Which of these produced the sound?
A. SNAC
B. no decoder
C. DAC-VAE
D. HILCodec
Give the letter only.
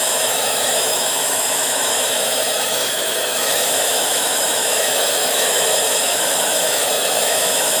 C